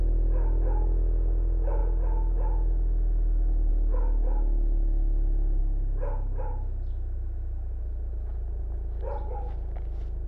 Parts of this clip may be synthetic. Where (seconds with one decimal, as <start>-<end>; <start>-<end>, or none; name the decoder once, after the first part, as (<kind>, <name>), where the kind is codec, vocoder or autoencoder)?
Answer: 1.8-3.7 (vocoder, BigVGAN v2)